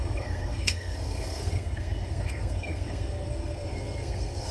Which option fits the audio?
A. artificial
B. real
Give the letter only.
A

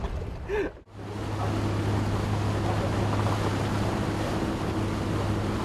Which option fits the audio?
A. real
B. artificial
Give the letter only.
A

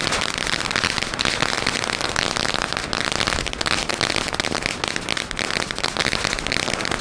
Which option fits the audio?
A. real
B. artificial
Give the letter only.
A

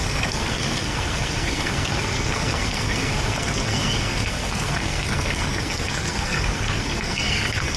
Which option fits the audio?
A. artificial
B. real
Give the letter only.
A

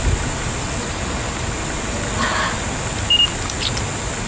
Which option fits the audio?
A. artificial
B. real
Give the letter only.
B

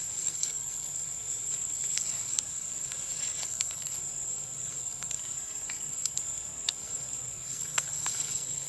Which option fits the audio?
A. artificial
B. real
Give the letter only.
A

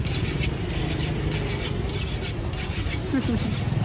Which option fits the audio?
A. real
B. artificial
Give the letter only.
A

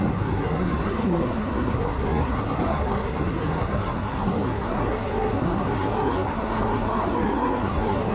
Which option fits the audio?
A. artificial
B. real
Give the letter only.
A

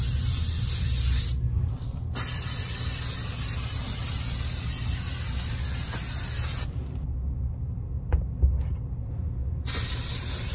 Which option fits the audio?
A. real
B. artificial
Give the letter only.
A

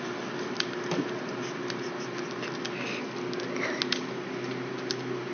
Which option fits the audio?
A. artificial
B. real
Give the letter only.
B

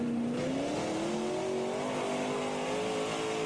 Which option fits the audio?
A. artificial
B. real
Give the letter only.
B